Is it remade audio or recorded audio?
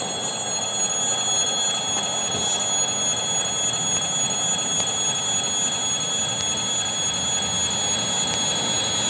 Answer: recorded